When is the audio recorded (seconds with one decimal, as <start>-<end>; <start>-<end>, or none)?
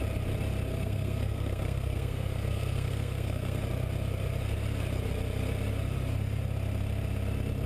0.0-0.7; 3.6-7.7